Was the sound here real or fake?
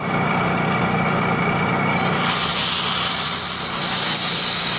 real